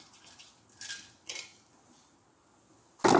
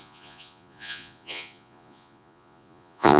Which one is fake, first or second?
second